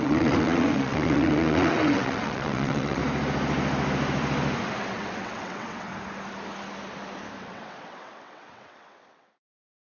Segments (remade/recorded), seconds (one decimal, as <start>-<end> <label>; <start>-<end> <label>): 0.0-3.0 remade; 3.0-4.8 recorded; 4.8-5.9 remade; 5.9-7.4 recorded; 7.4-10.0 remade